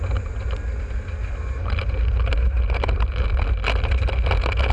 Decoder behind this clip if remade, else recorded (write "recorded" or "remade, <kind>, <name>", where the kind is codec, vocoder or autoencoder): recorded